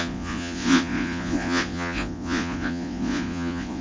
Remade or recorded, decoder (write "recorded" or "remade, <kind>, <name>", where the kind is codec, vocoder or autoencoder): remade, vocoder, Vocos